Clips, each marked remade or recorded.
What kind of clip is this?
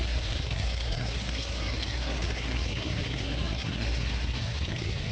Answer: remade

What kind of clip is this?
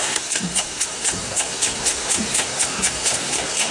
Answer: remade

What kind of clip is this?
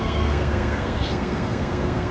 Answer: remade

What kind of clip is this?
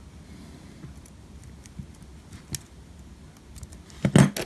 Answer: recorded